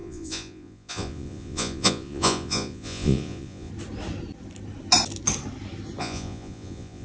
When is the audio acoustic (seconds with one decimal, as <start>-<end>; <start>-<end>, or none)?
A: 3.7-6.0